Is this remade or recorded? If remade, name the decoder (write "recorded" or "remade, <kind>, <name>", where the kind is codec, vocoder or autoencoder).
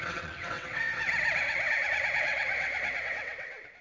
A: remade, vocoder, WaveNeXt